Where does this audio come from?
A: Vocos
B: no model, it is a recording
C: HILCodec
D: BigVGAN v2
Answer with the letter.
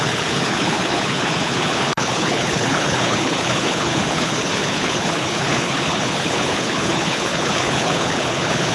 C